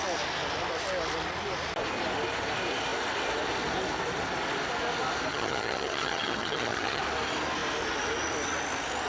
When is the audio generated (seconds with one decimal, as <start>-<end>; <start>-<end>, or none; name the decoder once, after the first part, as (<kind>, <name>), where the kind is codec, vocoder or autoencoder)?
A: 5.3-7.0 (vocoder, HiFi-GAN)